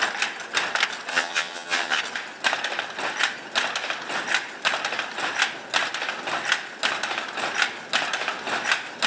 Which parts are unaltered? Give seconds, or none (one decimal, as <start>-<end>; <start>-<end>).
0.0-1.1; 2.0-9.1